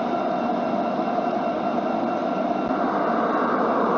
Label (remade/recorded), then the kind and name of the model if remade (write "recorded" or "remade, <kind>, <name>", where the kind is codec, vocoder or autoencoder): remade, vocoder, BigVGAN v2